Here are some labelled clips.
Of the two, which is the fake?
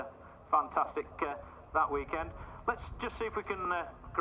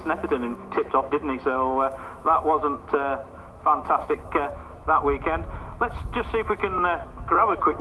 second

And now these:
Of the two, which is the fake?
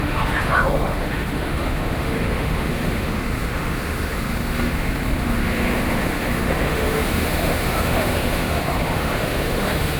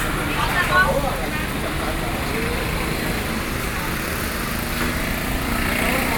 first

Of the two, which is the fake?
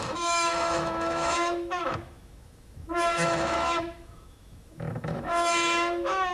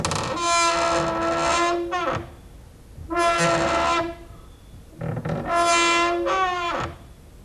first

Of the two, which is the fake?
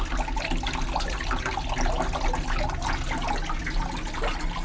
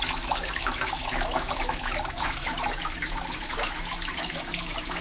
second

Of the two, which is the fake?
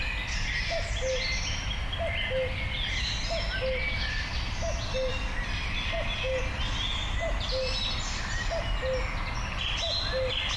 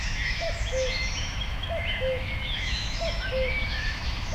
second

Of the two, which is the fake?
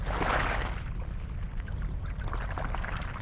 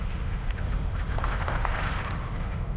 second